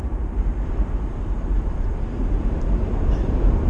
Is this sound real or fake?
fake